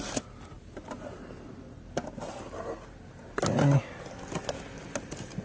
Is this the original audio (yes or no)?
yes